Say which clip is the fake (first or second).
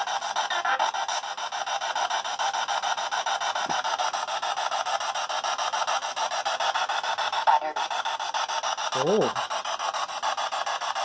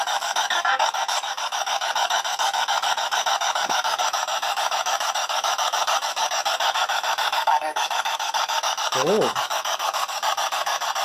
second